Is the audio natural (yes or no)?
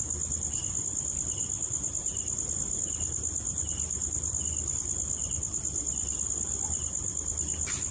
yes